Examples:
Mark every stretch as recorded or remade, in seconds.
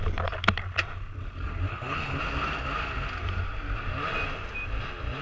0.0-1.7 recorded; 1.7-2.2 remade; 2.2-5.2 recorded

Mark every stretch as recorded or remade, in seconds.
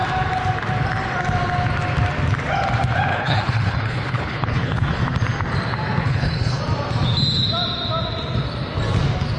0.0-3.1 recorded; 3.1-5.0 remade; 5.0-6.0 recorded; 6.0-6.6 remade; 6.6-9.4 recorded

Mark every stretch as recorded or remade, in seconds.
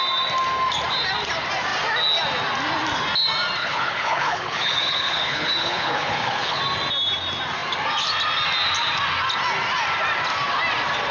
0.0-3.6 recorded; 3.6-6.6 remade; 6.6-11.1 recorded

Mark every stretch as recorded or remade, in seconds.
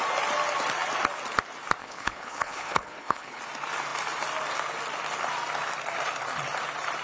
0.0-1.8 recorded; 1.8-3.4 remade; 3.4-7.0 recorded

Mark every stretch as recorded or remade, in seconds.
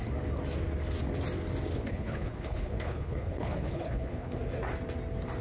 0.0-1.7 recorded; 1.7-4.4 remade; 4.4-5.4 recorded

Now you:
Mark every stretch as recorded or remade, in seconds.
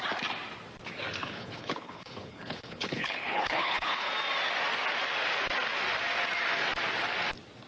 0.0-1.2 recorded; 1.2-4.1 remade; 4.1-7.7 recorded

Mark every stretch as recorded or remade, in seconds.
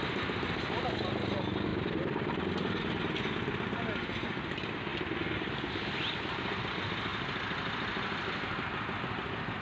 0.0-9.6 recorded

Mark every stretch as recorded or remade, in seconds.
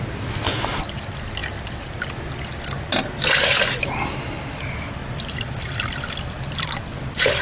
0.0-7.4 recorded